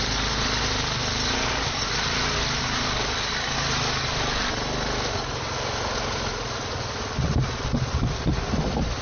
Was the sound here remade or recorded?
recorded